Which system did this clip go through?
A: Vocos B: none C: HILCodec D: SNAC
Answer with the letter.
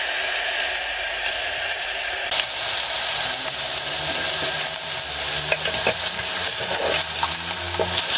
B